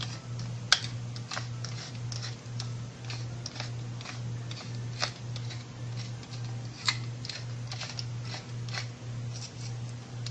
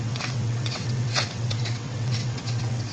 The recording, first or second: first